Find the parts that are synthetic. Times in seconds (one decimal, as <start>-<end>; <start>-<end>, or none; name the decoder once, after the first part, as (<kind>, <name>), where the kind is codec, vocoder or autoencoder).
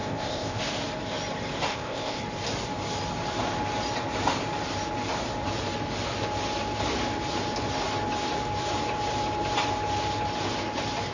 0.0-0.6 (codec, ZipCodec); 1.7-2.2